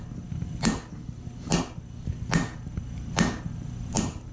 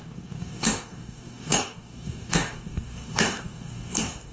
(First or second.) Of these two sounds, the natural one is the first